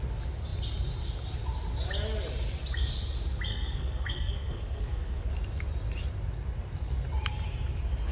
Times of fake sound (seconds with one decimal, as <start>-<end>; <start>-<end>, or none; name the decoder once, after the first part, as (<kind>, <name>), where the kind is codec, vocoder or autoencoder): 3.5-5.3 (codec, SNAC)

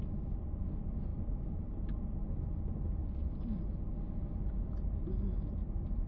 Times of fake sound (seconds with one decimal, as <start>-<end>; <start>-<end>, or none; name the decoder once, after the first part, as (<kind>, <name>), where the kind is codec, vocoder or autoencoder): none

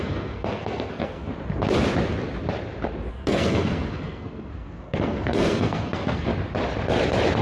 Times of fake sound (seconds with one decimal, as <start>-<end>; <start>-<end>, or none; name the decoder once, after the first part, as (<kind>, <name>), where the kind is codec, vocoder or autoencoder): 0.0-1.3 (codec, SNAC); 3.1-6.3

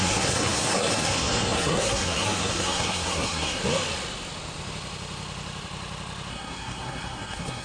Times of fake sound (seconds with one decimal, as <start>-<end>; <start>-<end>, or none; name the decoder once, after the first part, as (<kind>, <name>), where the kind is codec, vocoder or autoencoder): 0.0-3.6 (codec, SNAC); 6.3-7.6

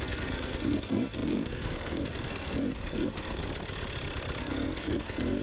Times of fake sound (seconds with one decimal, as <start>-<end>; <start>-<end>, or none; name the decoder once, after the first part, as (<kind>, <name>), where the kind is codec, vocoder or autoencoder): 0.0-3.4 (codec, SNAC); 4.4-5.4

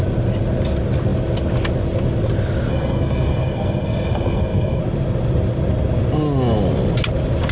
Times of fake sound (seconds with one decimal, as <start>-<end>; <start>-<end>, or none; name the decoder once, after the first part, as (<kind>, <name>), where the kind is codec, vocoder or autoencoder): 2.7-4.8 (codec, SNAC)